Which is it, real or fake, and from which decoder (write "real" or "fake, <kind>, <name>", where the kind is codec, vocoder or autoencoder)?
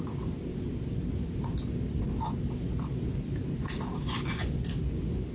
real